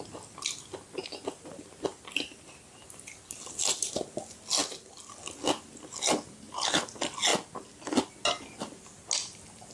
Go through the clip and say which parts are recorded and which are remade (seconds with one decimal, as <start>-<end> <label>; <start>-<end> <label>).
0.0-1.0 recorded; 1.0-2.5 remade; 2.5-7.3 recorded; 7.3-8.1 remade; 8.1-9.7 recorded